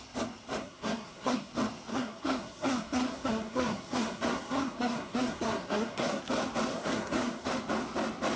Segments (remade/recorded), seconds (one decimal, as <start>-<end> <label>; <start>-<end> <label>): 0.0-0.6 recorded; 0.6-1.5 remade; 1.5-1.9 recorded; 1.9-6.2 remade; 6.2-6.7 recorded; 6.7-7.5 remade; 7.5-8.4 recorded